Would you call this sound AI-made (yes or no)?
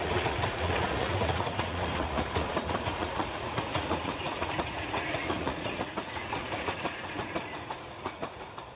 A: yes